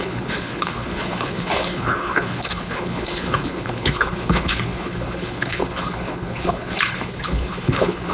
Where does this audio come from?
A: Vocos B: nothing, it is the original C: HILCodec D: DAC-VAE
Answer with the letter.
C